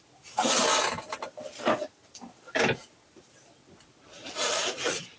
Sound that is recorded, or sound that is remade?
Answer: recorded